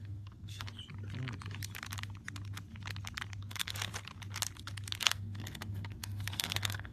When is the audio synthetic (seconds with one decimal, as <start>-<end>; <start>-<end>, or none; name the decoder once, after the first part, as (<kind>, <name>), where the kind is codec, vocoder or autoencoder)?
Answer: 0.0-0.8 (codec, SNAC); 3.4-3.9; 5.0-6.9